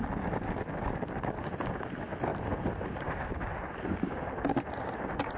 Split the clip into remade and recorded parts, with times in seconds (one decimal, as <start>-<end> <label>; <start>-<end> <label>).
0.0-2.3 recorded; 2.3-4.1 remade; 4.1-5.4 recorded